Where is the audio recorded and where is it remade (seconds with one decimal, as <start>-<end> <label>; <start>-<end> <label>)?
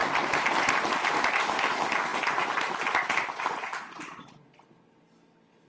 0.0-5.7 recorded